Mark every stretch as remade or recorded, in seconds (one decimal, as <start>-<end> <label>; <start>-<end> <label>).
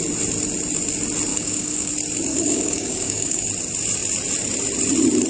0.0-1.3 recorded; 1.3-1.9 remade; 1.9-2.3 recorded; 2.3-3.5 remade; 3.5-5.3 recorded